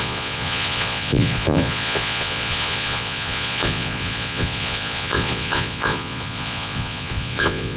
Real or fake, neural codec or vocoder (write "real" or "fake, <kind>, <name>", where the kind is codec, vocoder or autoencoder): fake, vocoder, Vocos